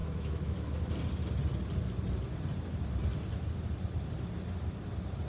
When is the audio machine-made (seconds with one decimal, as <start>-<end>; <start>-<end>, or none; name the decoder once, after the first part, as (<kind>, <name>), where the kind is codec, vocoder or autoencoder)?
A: 0.0-0.8 (autoencoder, DAC-VAE)